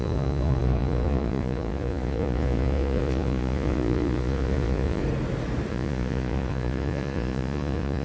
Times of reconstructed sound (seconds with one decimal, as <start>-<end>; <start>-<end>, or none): 0.0-5.0; 5.7-8.0